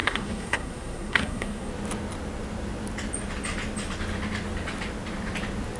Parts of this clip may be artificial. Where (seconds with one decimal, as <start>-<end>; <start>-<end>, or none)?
0.0-1.7

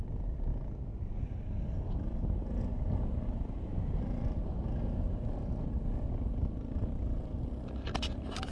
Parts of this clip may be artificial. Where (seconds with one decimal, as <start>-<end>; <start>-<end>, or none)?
none